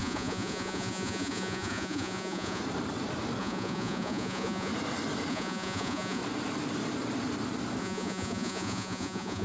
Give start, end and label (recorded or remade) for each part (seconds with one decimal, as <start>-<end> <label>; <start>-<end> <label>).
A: 0.0-2.6 remade; 2.6-3.4 recorded; 3.4-4.7 remade; 4.7-5.3 recorded; 5.3-6.2 remade; 6.2-7.8 recorded; 7.8-9.4 remade